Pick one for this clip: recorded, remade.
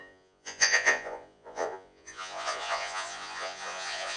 remade